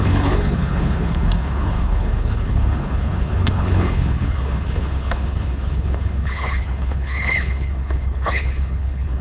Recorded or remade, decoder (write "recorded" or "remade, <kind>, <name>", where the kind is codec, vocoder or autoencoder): remade, codec, HILCodec